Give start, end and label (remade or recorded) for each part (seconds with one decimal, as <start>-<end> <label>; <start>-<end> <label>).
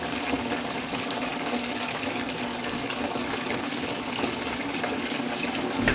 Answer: 0.0-5.9 remade